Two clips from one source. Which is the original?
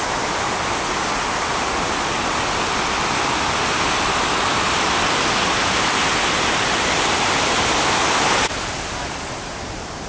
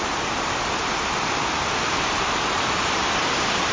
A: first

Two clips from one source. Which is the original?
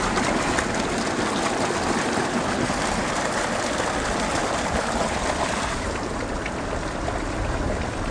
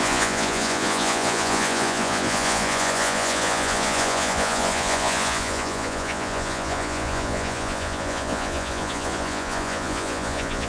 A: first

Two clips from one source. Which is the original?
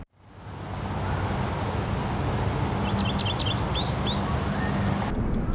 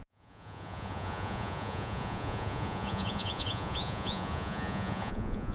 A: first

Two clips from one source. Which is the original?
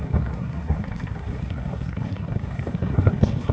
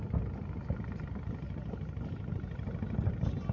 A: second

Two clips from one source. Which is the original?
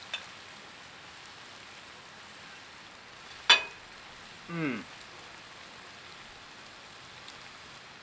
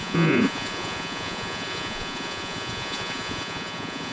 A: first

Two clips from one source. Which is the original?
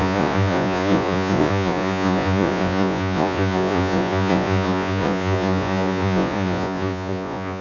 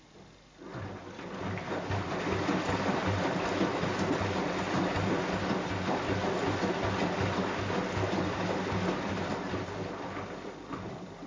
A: second